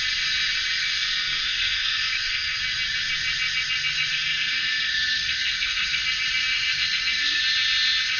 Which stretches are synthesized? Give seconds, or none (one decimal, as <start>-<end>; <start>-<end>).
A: 0.8-2.6; 4.1-6.0; 6.5-7.4